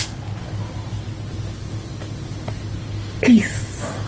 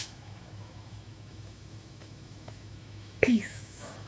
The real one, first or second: first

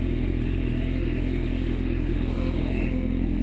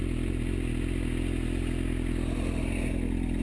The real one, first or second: second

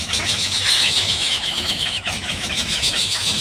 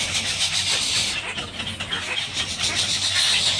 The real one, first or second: second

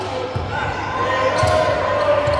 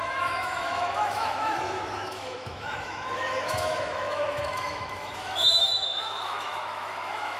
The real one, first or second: first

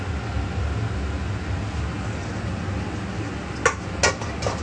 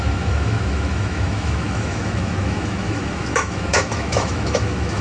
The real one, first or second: first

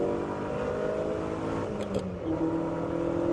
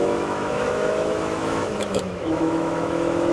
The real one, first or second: first